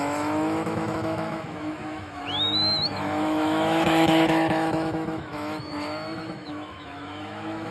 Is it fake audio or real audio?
fake